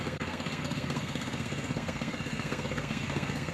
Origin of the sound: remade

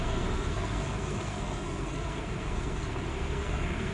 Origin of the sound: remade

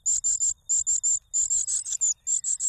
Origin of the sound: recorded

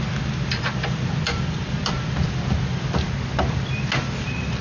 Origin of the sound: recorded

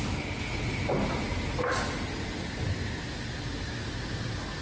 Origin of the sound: recorded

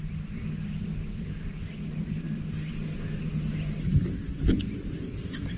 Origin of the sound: recorded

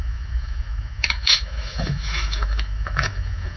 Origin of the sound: remade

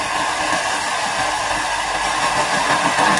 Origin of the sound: recorded